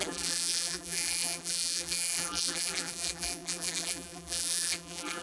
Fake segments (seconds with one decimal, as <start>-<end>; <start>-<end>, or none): 0.0-5.2